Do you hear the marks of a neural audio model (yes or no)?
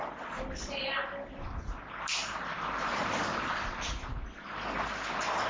no